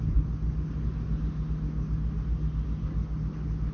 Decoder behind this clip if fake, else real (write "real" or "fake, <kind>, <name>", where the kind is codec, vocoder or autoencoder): real